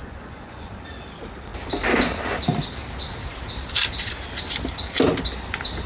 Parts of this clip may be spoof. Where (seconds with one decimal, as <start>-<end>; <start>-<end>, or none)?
0.0-0.7